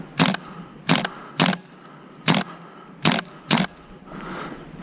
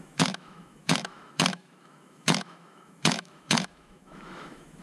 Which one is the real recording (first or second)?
first